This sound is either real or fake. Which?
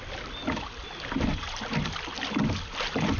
real